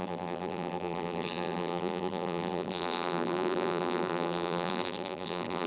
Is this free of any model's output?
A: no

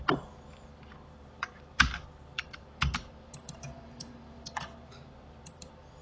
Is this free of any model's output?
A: no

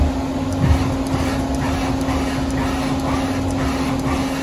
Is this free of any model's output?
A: yes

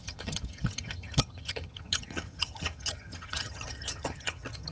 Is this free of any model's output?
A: no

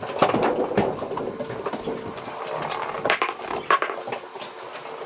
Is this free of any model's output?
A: yes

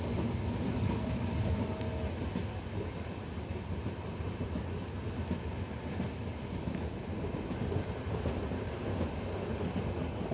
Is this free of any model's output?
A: yes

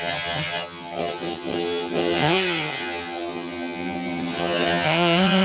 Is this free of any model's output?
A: no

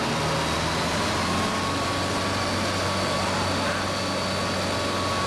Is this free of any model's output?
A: yes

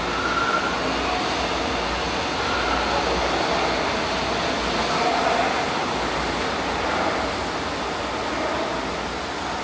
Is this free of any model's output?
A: yes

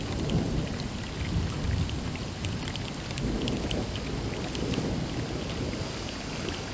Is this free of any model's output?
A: yes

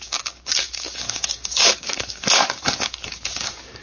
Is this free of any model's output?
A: no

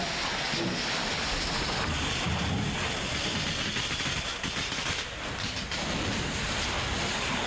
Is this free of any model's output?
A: yes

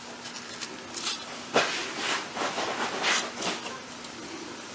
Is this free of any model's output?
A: yes